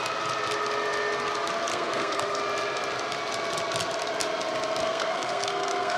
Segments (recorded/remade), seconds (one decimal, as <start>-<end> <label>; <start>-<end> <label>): 0.0-1.7 recorded; 1.7-2.4 remade; 2.4-4.8 recorded; 4.8-6.0 remade

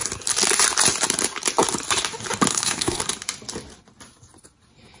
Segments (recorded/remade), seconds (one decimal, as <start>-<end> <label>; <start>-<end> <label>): 0.0-2.5 recorded; 2.5-3.0 remade; 3.0-5.0 recorded

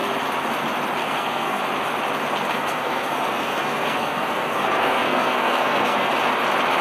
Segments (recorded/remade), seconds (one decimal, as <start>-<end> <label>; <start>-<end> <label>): 0.0-1.0 recorded; 1.0-1.6 remade; 1.6-2.5 recorded; 2.5-6.1 remade; 6.1-6.8 recorded